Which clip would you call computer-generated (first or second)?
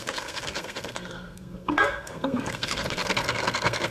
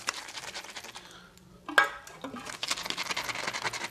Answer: first